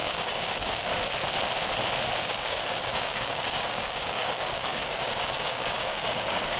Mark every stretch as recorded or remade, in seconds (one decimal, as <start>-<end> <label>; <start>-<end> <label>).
0.0-0.9 remade; 0.9-2.2 recorded; 2.2-6.6 remade